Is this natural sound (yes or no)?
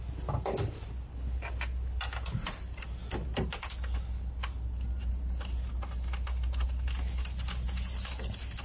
yes